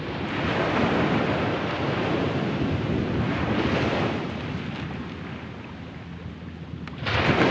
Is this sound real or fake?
real